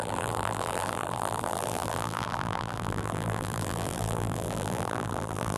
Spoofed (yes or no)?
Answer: yes